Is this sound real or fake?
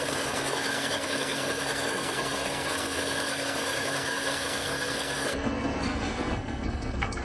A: fake